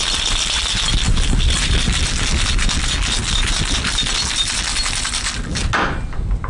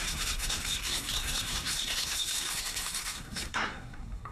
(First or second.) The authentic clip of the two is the first